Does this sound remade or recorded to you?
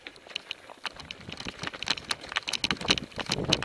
recorded